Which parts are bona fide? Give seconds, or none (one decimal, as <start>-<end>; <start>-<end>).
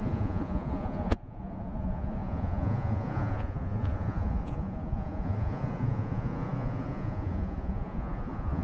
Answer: none